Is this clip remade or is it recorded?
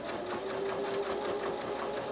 recorded